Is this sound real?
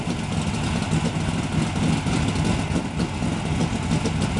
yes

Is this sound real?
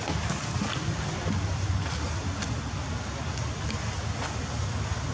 yes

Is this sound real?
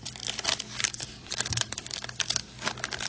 yes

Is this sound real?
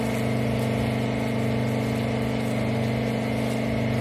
yes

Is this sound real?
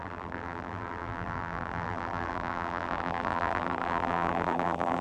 no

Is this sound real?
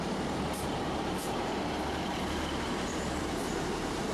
no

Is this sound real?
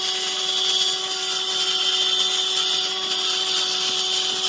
yes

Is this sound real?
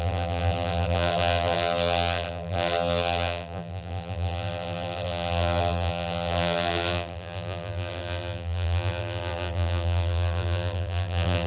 no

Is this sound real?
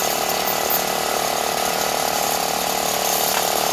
no